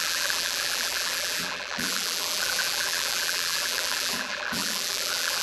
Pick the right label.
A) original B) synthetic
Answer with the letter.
B